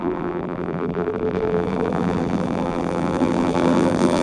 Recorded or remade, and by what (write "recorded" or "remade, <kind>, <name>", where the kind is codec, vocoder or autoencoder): remade, vocoder, BigVGAN v2